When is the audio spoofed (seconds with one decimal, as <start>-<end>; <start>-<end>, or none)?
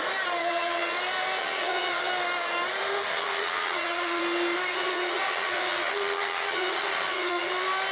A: 0.4-0.9; 1.4-2.1; 3.1-4.2; 4.7-7.5